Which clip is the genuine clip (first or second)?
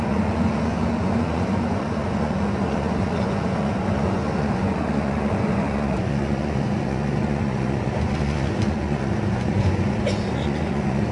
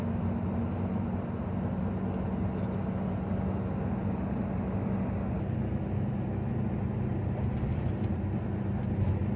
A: second